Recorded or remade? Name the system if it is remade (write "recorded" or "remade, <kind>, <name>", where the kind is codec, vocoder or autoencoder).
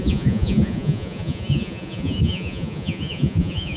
remade, vocoder, Vocos